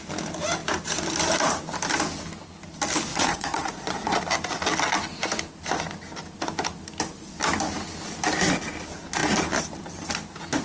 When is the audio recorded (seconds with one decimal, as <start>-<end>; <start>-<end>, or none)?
0.0-3.1; 4.2-10.6